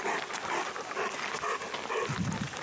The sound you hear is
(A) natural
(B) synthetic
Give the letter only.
A